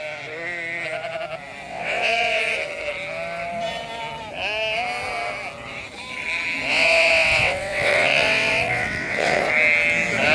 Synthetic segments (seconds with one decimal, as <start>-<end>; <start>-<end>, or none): 1.7-2.4; 6.7-9.4